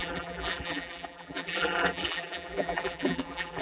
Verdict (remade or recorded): remade